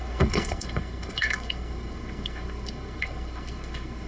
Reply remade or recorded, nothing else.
remade